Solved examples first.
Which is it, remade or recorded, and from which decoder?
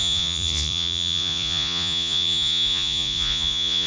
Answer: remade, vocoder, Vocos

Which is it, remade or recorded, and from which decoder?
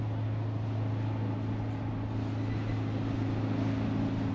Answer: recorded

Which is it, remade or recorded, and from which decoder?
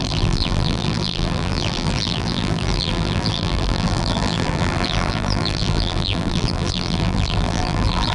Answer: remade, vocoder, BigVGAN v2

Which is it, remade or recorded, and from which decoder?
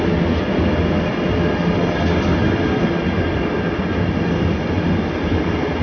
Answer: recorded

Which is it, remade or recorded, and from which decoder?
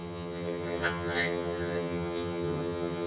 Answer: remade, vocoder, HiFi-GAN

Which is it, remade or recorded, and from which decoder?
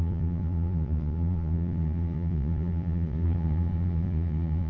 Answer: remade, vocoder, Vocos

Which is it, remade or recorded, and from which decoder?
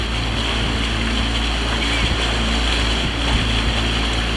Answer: recorded